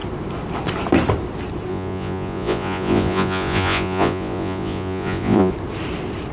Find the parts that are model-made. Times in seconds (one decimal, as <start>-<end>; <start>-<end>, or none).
1.7-5.5

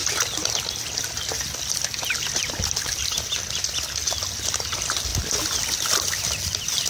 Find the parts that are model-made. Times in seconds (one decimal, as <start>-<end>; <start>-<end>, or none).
none

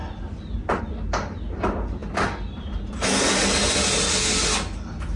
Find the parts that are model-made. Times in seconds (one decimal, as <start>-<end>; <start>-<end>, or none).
none